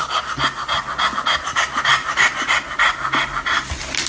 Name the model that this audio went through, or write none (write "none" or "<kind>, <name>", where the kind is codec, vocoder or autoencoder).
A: none